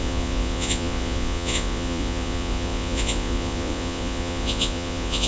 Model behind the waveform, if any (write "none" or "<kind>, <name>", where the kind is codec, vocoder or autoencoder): vocoder, Vocos